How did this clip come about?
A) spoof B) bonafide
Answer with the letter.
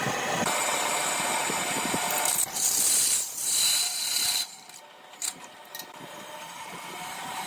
A